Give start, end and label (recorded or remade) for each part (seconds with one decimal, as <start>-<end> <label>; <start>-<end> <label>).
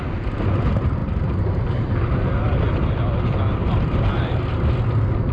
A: 0.0-3.6 recorded; 3.6-4.4 remade; 4.4-5.3 recorded